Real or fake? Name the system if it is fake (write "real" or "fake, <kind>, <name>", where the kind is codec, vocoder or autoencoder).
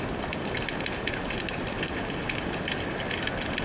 real